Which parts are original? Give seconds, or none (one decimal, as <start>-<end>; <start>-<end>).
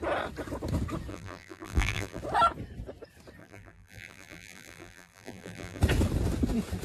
0.0-1.1; 2.2-3.4; 5.8-6.8